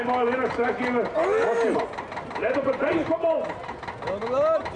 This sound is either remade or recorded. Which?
recorded